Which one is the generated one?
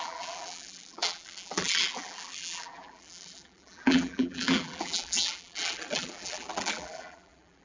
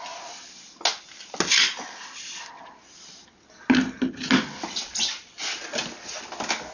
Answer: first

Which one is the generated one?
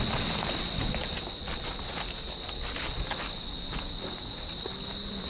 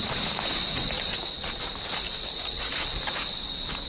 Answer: second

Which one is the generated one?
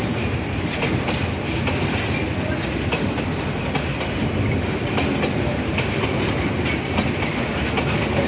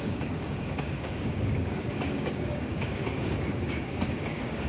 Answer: second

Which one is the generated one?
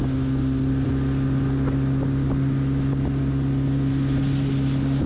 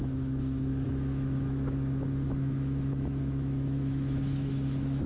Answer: second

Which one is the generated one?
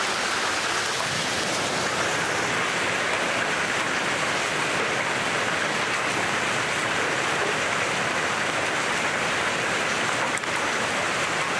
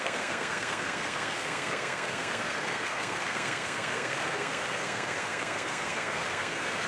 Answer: second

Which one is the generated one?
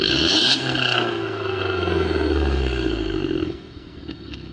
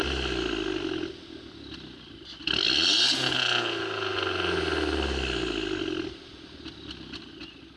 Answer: first